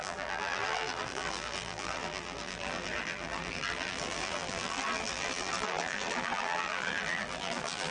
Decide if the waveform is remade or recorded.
remade